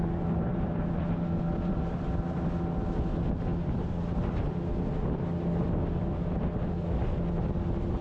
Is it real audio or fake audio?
real